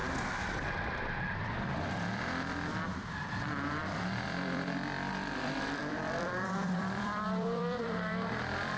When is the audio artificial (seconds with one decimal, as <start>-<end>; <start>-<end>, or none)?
0.8-8.8